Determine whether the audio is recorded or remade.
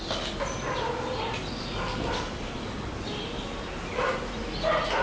recorded